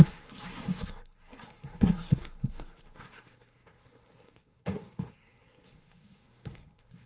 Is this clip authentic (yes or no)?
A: no